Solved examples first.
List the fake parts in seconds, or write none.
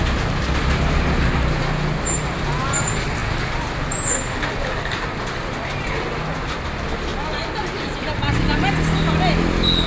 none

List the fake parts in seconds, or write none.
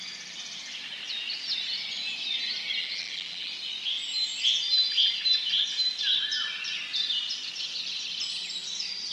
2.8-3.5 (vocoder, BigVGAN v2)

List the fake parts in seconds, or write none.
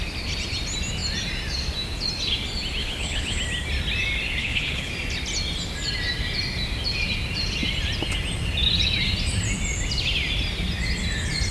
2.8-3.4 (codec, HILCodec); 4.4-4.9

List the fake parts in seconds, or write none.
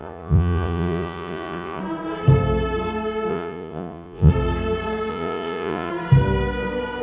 0.0-1.8 (vocoder, Vocos); 3.3-4.3; 5.1-5.9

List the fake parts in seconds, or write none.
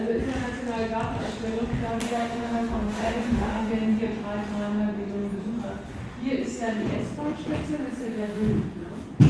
2.0-3.7 (autoencoder, DAC-VAE); 8.0-8.5